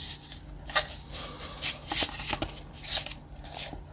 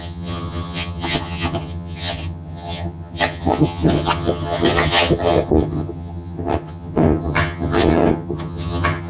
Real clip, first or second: first